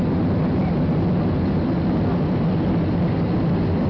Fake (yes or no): no